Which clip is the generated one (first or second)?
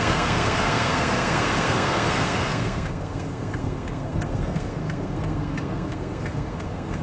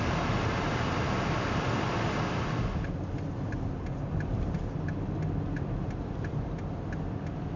first